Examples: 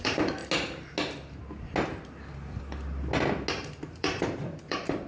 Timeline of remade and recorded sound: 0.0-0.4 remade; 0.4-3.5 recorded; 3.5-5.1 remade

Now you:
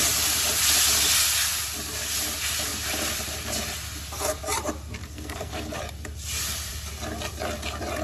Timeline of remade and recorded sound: 0.0-5.0 recorded; 5.0-5.8 remade; 5.8-8.0 recorded

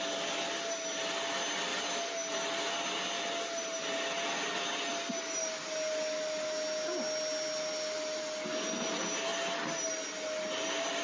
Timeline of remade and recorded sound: 0.0-11.0 recorded

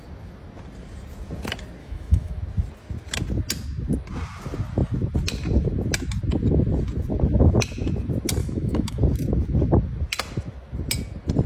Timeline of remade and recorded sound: 0.0-1.8 recorded; 1.8-2.4 remade; 2.4-8.4 recorded; 8.4-9.0 remade; 9.0-11.5 recorded

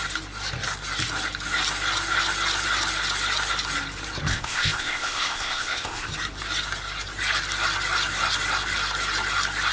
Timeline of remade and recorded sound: 0.0-4.3 recorded; 4.3-6.1 remade; 6.1-9.7 recorded

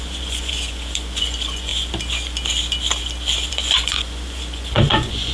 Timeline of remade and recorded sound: 0.0-1.7 remade; 1.7-3.5 recorded; 3.5-5.3 remade